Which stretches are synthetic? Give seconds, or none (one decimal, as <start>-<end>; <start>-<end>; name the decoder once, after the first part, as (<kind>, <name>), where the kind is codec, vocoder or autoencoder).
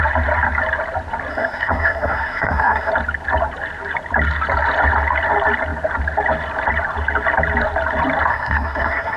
1.3-2.9 (codec, SNAC); 8.3-9.2